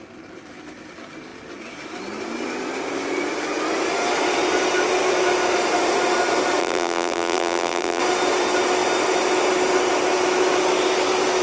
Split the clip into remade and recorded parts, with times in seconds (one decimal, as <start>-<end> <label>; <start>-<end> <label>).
0.0-6.6 recorded; 6.6-8.0 remade; 8.0-11.4 recorded